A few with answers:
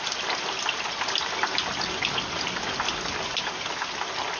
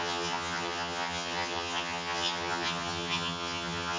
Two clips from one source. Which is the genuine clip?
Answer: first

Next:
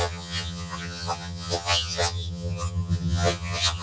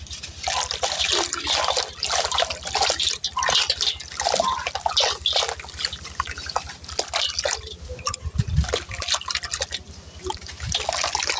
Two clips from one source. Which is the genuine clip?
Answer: second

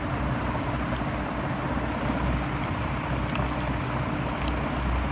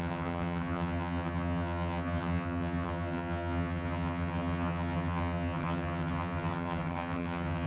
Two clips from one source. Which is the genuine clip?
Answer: first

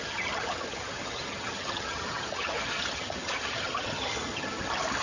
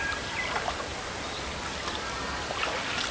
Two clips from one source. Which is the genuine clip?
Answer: second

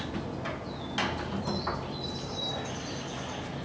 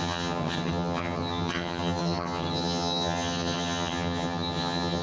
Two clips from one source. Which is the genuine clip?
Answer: first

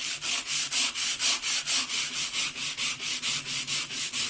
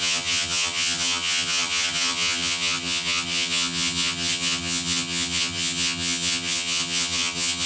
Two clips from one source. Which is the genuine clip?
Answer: first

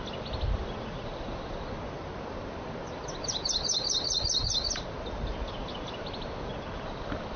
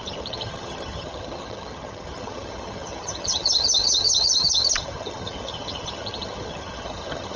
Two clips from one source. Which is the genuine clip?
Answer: first